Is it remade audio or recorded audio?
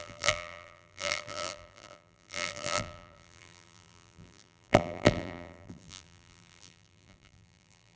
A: remade